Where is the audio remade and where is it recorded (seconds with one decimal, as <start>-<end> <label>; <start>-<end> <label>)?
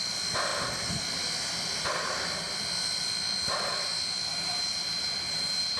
0.0-4.3 recorded; 4.3-5.8 remade